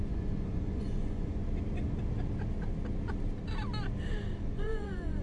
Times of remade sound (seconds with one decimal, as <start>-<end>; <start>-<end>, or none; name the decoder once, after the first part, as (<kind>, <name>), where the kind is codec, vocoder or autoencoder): 0.0-1.4 (vocoder, Vocos); 4.5-5.2